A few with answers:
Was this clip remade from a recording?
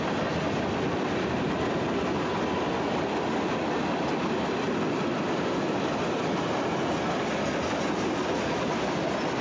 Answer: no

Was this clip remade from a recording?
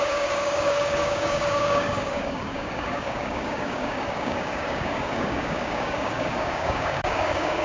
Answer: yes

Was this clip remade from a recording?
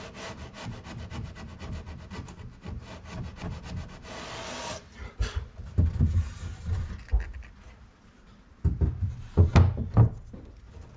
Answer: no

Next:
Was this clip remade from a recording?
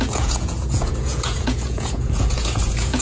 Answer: yes